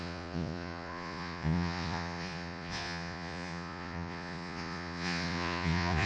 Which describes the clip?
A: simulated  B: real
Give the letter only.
A